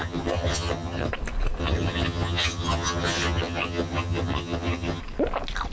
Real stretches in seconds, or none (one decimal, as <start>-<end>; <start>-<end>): 1.1-1.6; 5.0-5.7